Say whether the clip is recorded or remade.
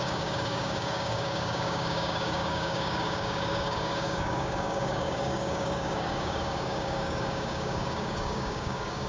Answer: remade